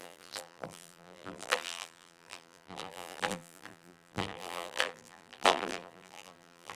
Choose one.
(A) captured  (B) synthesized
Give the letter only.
B